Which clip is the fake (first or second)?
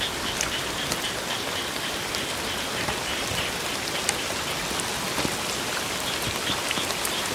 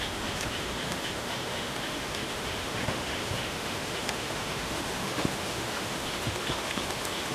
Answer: second